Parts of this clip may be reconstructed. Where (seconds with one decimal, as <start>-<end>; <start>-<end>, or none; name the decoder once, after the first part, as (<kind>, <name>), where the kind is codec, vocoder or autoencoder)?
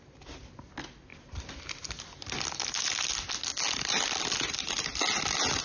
none